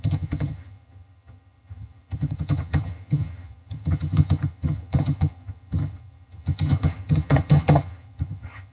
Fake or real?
fake